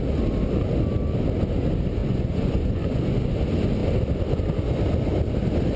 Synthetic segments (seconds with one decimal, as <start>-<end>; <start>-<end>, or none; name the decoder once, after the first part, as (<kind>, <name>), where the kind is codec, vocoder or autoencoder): 2.0-3.0 (vocoder, Vocos)